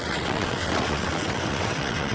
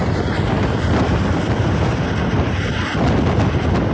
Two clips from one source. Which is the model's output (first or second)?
first